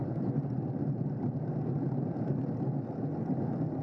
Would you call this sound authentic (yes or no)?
yes